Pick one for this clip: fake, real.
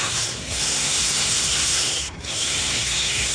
fake